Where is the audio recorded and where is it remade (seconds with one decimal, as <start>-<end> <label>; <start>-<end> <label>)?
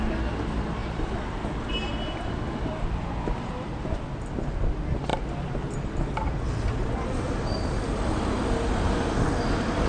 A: 0.0-9.9 recorded